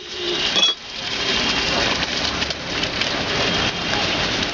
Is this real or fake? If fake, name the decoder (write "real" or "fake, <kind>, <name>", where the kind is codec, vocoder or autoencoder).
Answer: fake, vocoder, BigVGAN v2